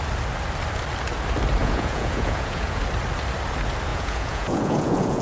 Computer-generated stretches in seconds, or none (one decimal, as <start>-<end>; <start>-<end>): 1.6-2.8; 3.9-5.2